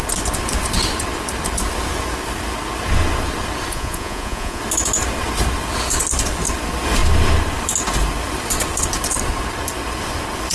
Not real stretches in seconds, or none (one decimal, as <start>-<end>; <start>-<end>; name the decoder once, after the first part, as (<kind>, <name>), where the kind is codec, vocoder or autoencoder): 3.7-4.6 (vocoder, Vocos)